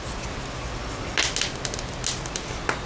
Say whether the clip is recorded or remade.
recorded